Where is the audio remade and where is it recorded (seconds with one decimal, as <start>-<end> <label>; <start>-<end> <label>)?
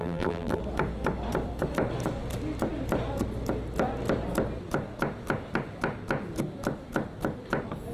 0.0-0.6 remade; 0.6-7.9 recorded